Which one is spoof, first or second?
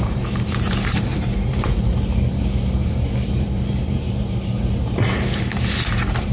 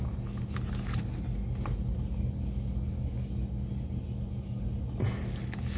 first